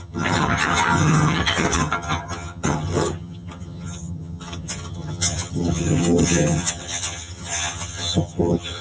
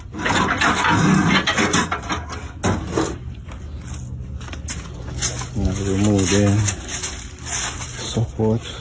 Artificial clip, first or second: first